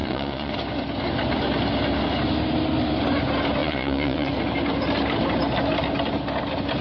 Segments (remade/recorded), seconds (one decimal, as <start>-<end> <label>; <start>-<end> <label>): 0.0-0.5 remade; 0.5-3.6 recorded; 3.6-4.3 remade; 4.3-6.8 recorded